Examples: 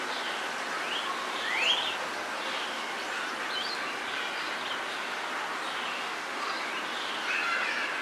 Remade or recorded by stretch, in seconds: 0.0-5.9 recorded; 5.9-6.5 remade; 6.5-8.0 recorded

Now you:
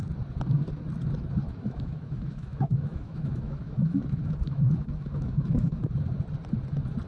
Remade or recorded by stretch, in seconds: 0.0-1.5 recorded; 1.5-5.8 remade; 5.8-7.1 recorded